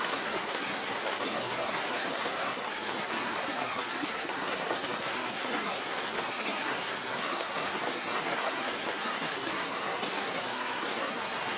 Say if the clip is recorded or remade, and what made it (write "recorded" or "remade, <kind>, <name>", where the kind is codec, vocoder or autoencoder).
remade, codec, SNAC